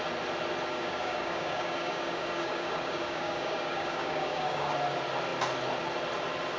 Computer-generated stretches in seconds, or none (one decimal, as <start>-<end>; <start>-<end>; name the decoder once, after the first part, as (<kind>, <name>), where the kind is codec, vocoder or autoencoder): 0.7-4.7 (codec, DAC)